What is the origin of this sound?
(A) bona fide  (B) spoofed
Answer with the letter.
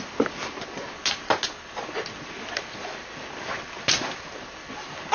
A